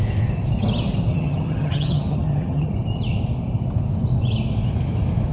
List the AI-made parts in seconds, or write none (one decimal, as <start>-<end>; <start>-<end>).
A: 1.1-2.7